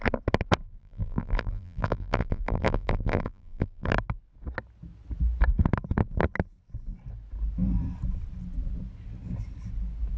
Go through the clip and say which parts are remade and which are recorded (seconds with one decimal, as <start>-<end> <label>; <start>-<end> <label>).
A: 0.0-0.8 recorded; 0.8-3.9 remade; 3.9-10.2 recorded